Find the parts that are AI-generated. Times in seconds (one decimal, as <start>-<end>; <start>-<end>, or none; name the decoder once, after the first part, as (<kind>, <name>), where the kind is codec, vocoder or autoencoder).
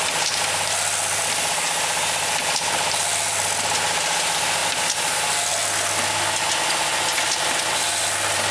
none